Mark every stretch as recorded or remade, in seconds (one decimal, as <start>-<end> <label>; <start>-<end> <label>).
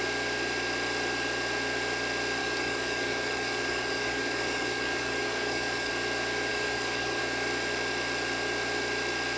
0.0-2.4 recorded; 2.4-5.9 remade; 5.9-6.5 recorded; 6.5-7.2 remade; 7.2-9.4 recorded